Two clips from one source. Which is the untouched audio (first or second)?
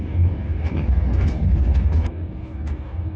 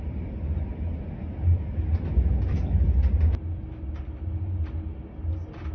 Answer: second